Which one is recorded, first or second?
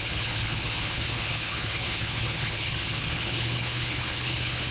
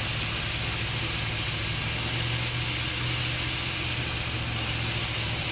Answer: second